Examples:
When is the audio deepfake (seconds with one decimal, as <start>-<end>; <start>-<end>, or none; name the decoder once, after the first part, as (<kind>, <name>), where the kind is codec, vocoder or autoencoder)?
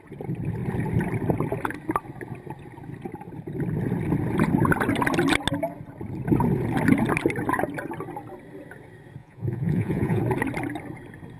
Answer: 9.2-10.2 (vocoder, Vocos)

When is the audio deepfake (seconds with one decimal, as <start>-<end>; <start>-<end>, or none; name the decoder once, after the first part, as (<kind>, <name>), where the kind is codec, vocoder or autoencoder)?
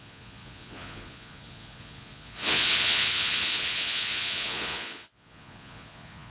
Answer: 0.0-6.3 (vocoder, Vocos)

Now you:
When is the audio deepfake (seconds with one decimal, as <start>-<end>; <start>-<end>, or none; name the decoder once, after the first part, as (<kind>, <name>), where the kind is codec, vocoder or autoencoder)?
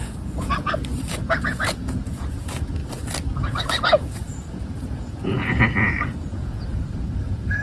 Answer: 0.0-0.5 (vocoder, Vocos); 1.1-2.8; 3.4-7.6